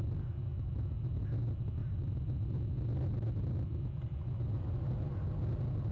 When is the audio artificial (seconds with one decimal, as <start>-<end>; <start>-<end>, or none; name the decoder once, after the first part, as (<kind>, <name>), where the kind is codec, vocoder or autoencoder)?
none